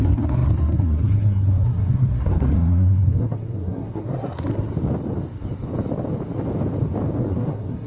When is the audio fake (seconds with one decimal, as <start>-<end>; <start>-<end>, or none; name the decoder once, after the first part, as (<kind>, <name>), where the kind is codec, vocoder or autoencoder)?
0.0-4.7 (codec, SNAC); 7.2-7.9